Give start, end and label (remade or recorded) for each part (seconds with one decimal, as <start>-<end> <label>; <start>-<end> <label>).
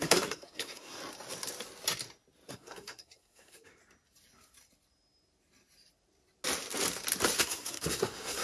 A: 0.0-1.0 remade; 1.0-2.5 recorded; 2.5-3.8 remade; 3.8-7.4 recorded; 7.4-8.4 remade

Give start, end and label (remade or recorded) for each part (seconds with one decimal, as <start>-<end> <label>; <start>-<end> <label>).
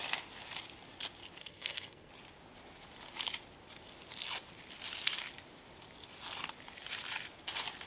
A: 0.0-1.4 recorded; 1.4-2.1 remade; 2.1-7.9 recorded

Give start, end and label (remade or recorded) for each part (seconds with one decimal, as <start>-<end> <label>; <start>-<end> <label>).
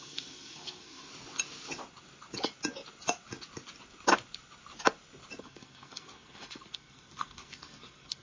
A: 0.0-1.1 remade; 1.1-5.4 recorded; 5.4-8.2 remade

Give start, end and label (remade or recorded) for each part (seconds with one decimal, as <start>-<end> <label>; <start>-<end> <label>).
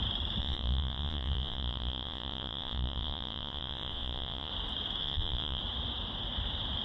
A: 0.0-0.4 recorded; 0.4-4.5 remade; 4.5-5.0 recorded; 5.0-5.6 remade; 5.6-6.8 recorded